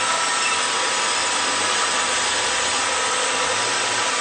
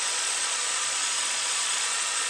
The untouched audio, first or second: first